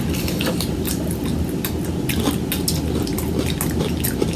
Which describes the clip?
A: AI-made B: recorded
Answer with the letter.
B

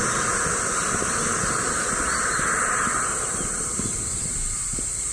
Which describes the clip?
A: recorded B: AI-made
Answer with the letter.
B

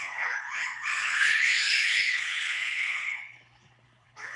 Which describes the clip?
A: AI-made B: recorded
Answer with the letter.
A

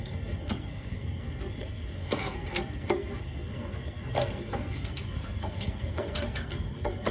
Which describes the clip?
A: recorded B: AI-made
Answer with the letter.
B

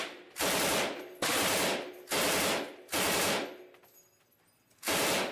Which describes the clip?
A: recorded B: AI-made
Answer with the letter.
A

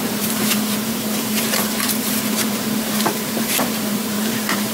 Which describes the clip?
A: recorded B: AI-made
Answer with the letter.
B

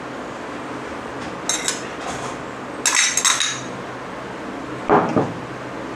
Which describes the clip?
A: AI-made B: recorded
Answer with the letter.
B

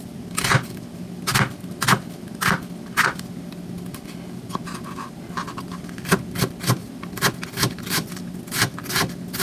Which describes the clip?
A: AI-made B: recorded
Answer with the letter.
B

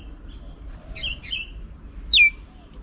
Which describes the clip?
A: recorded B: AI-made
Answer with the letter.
A